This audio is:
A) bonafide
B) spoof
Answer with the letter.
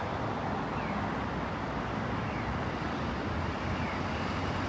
A